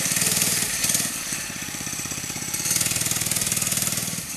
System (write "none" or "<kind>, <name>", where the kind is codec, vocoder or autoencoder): vocoder, BigVGAN v2